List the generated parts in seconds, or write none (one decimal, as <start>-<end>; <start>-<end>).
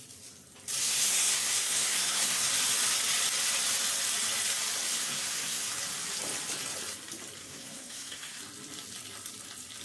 0.8-2.5; 4.9-5.7; 7.4-8.4